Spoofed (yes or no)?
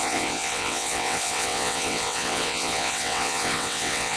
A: yes